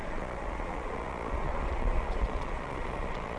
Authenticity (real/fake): fake